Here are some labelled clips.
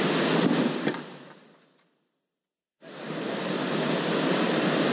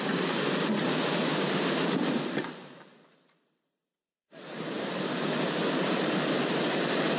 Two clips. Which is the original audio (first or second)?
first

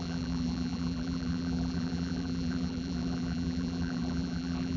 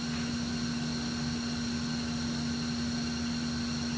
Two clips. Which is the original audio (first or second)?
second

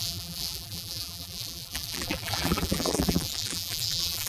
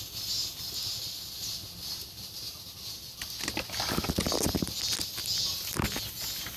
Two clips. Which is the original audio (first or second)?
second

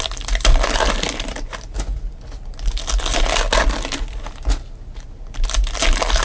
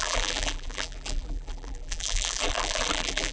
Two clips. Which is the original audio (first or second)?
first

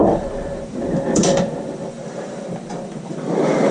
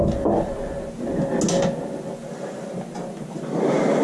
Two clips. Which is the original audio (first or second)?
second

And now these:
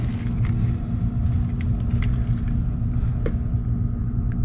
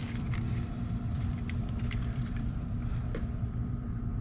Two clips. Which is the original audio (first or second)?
first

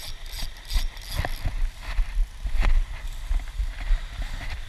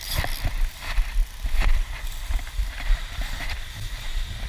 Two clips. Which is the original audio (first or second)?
first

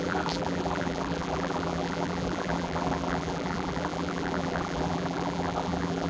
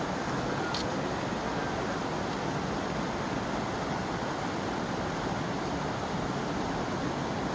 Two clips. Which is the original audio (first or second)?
second